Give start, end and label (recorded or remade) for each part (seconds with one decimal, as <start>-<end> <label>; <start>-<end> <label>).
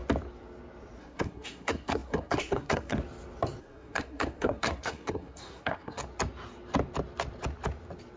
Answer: 0.0-1.0 recorded; 1.0-3.0 remade; 3.0-3.6 recorded; 3.6-6.0 remade; 6.0-8.2 recorded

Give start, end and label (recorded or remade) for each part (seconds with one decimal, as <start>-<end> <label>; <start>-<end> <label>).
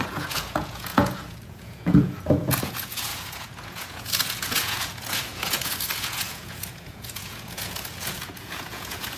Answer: 0.0-9.2 remade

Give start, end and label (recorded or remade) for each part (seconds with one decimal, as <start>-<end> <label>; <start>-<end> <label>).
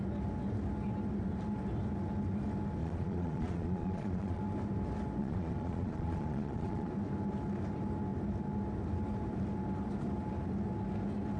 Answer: 0.0-2.8 recorded; 2.8-4.4 remade; 4.4-5.2 recorded; 5.2-6.9 remade; 6.9-11.4 recorded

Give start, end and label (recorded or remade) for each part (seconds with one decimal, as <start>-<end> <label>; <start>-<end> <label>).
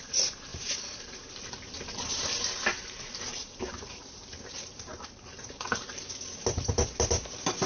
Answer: 0.0-0.5 recorded; 0.5-1.3 remade; 1.3-2.7 recorded; 2.7-7.3 remade; 7.3-7.7 recorded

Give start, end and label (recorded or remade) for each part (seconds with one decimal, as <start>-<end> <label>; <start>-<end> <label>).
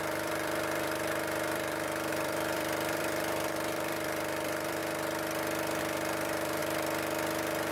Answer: 0.0-4.8 remade; 4.8-5.8 recorded; 5.8-6.6 remade; 6.6-7.7 recorded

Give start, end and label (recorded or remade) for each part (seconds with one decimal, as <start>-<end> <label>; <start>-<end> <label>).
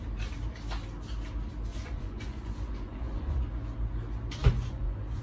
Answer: 0.0-1.7 recorded; 1.7-3.4 remade; 3.4-4.4 recorded; 4.4-5.2 remade